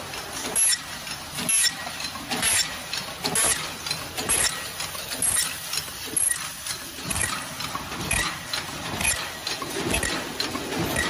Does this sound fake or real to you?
real